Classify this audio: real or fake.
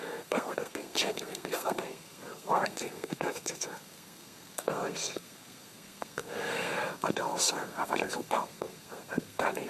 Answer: fake